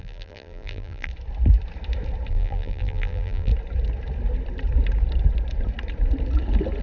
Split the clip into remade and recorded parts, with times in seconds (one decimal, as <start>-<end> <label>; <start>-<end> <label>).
0.0-1.1 remade; 1.1-2.3 recorded; 2.3-3.5 remade; 3.5-6.8 recorded